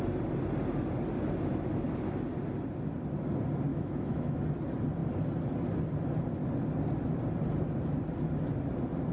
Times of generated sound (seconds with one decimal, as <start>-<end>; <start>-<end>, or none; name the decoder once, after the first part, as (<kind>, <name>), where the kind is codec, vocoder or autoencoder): 3.7-4.4 (autoencoder, DAC-VAE)